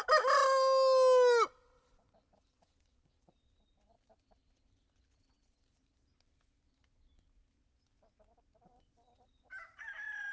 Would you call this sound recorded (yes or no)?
yes